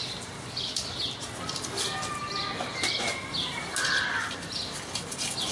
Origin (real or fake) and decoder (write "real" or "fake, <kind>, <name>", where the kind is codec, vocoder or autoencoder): real